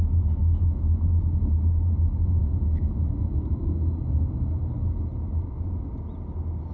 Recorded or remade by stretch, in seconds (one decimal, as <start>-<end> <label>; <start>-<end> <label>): 0.0-0.4 recorded; 0.4-1.4 remade; 1.4-2.4 recorded; 2.4-3.6 remade; 3.6-6.7 recorded